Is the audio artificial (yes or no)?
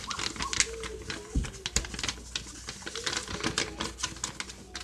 no